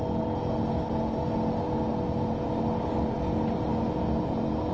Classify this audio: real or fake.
real